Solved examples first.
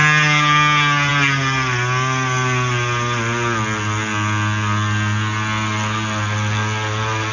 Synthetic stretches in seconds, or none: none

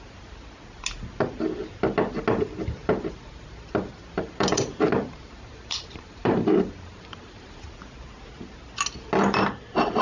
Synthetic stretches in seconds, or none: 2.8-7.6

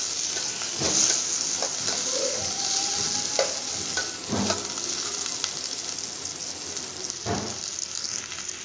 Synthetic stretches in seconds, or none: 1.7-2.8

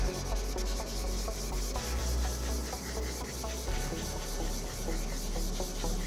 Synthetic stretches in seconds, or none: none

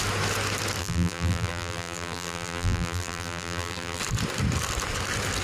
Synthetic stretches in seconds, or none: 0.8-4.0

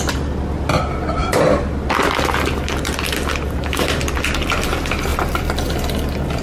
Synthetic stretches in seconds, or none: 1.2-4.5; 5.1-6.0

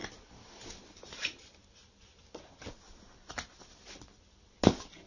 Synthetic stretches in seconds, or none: none